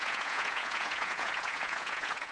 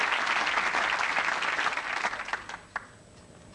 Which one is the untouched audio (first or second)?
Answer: second